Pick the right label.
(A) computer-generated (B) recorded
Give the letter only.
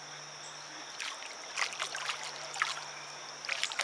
B